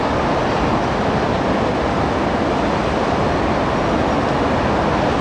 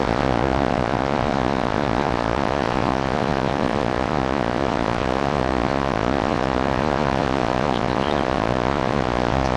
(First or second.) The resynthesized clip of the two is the second